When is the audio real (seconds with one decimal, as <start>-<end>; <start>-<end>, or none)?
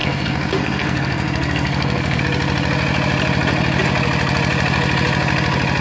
2.2-5.8